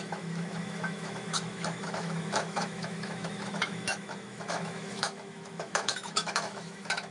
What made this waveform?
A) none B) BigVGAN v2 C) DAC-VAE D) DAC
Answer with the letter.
C